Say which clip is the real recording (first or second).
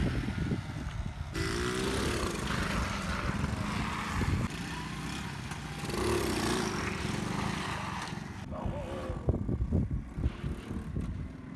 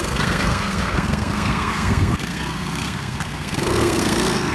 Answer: first